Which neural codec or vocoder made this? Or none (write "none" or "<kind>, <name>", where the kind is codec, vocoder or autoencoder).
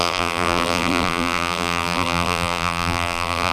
vocoder, BigVGAN v2